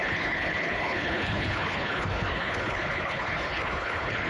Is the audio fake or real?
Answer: fake